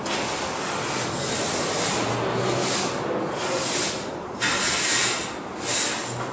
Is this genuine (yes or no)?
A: yes